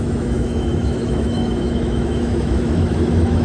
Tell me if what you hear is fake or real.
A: fake